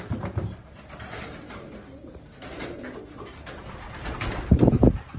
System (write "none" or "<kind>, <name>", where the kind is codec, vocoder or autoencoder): vocoder, BigVGAN v2